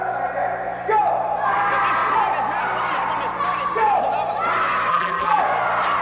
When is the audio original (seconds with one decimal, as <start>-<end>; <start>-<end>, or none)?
0.0-4.9; 5.4-6.0

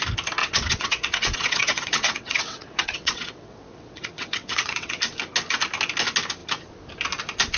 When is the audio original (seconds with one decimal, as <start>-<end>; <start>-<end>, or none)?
0.0-0.4; 5.0-7.6

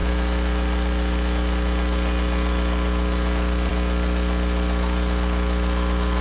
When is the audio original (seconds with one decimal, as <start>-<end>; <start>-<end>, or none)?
0.0-6.2

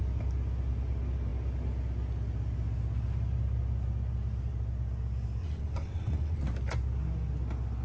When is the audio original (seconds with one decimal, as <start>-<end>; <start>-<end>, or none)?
0.0-5.4; 6.5-7.8

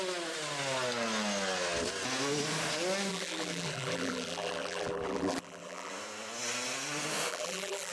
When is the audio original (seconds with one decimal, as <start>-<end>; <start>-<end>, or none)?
0.0-3.1; 5.9-7.3